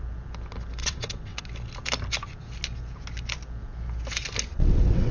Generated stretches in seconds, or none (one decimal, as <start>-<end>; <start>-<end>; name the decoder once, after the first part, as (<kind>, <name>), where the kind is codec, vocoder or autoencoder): 0.8-1.4 (vocoder, WaveNeXt); 4.5-5.1